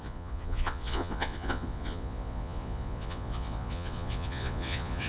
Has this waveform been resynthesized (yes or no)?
yes